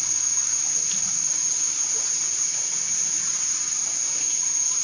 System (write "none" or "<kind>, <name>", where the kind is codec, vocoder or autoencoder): none